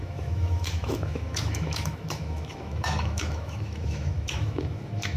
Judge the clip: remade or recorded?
remade